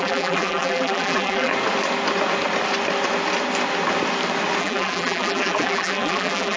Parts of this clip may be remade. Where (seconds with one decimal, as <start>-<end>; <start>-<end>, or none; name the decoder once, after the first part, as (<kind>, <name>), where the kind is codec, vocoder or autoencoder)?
0.0-1.5 (vocoder, BigVGAN v2); 4.6-6.6